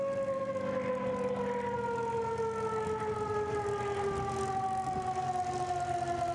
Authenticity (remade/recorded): recorded